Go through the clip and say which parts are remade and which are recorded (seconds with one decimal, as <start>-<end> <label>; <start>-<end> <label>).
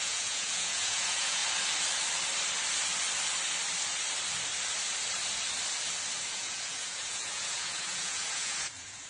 0.0-1.4 remade; 1.4-6.3 recorded; 6.3-9.1 remade